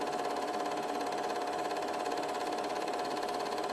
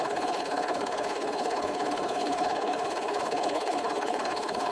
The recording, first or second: first